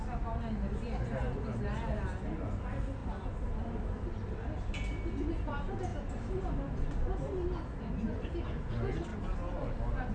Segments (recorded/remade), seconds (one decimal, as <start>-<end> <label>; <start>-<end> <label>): 0.0-10.1 recorded